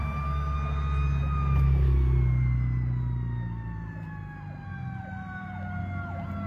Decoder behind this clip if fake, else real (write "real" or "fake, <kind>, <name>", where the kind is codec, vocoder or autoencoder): real